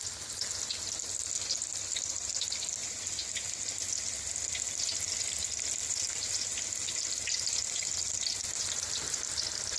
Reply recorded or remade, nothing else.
recorded